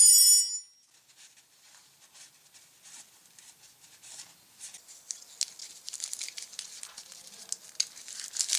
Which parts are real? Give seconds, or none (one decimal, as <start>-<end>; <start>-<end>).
0.0-8.6